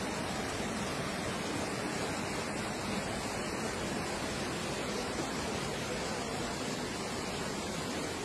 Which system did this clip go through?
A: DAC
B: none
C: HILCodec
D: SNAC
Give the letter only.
B